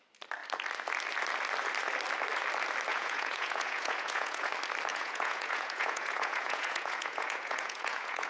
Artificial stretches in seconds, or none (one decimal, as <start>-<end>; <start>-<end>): 2.9-4.5; 4.9-8.3